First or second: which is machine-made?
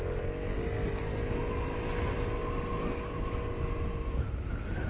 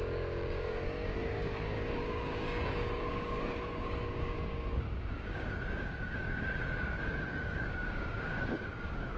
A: second